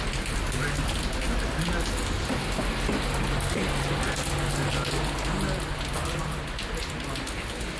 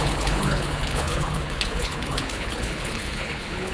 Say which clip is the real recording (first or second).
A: first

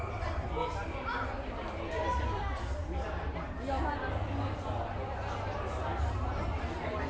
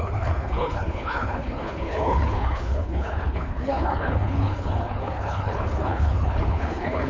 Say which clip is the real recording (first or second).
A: first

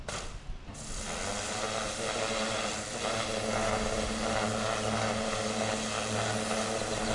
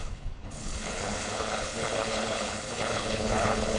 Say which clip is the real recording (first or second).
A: first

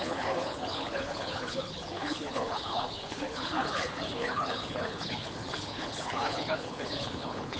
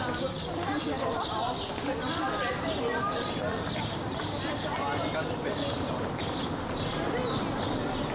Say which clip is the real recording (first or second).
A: second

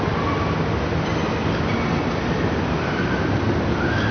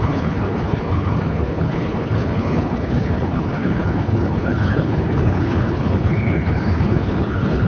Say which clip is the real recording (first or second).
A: first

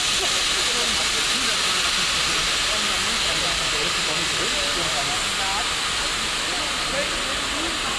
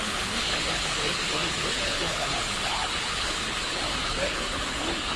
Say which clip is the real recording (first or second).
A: first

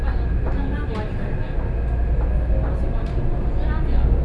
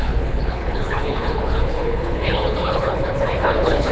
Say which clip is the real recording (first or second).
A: first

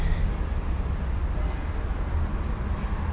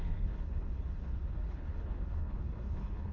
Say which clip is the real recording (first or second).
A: first